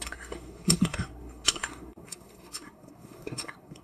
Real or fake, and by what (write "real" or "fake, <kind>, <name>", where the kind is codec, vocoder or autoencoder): fake, codec, SNAC